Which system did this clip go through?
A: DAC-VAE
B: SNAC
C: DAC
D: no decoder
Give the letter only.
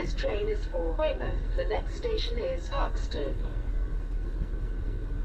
B